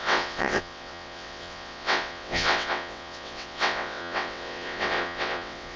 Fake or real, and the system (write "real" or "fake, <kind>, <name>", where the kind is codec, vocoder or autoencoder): fake, vocoder, WaveNeXt